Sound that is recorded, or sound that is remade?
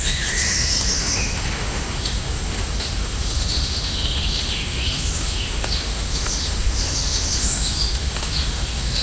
remade